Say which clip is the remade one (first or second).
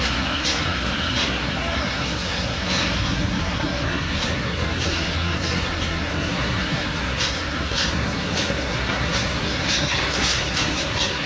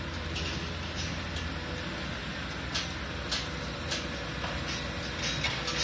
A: first